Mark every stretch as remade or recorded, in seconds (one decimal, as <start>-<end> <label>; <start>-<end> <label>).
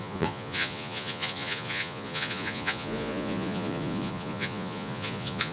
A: 0.0-5.5 remade